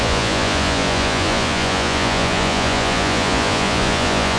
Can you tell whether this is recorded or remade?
remade